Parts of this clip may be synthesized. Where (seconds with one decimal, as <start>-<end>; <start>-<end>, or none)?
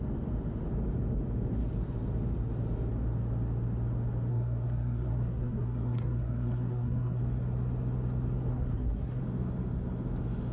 4.3-7.2; 8.5-9.2